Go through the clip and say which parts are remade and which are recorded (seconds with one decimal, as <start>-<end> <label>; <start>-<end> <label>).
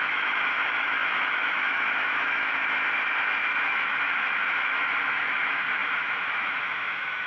0.0-2.6 remade; 2.6-3.6 recorded; 3.6-7.3 remade